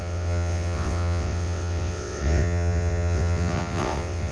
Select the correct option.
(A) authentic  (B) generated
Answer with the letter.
B